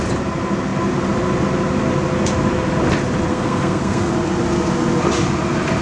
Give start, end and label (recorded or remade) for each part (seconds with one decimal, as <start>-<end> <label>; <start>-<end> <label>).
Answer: 0.0-3.3 recorded; 3.3-4.1 remade; 4.1-5.8 recorded